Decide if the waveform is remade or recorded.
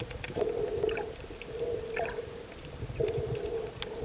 remade